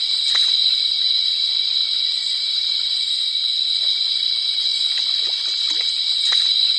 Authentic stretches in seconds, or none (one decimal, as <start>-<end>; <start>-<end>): 4.7-5.9